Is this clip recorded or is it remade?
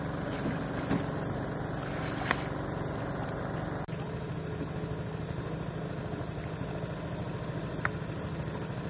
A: recorded